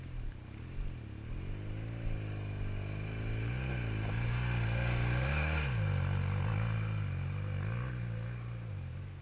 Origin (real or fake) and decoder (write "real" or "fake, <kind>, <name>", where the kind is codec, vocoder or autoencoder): real